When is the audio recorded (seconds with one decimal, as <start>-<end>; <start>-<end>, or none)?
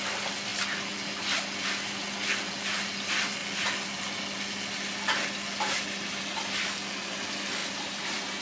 0.0-7.6